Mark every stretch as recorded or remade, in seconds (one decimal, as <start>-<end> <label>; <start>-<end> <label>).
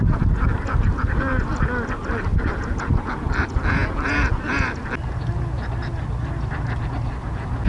0.0-7.7 recorded